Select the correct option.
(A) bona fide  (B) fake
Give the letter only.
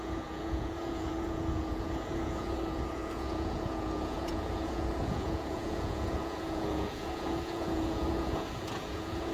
B